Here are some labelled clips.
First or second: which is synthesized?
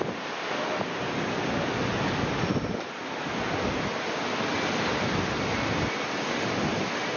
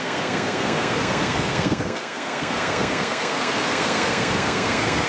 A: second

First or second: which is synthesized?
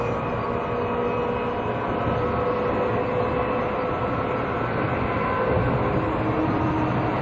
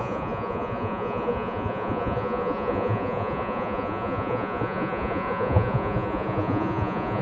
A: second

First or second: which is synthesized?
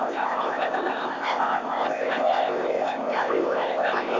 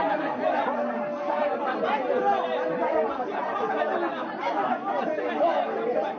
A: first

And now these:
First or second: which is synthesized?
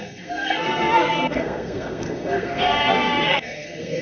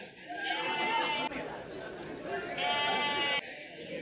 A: first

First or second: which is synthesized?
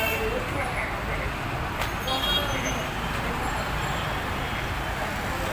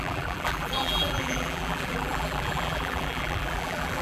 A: second